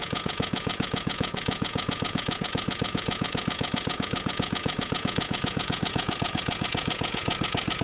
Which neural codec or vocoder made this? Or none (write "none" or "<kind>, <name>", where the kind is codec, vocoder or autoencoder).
vocoder, Vocos